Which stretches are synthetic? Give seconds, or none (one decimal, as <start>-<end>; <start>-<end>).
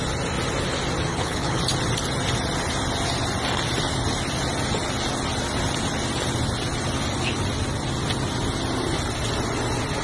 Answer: 1.1-1.6